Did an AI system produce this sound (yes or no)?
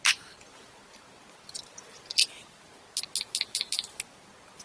no